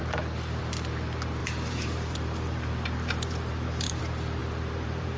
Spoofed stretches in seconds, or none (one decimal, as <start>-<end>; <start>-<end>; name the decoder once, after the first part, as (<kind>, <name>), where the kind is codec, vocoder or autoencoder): 1.4-4.0 (vocoder, BigVGAN v2); 4.4-5.2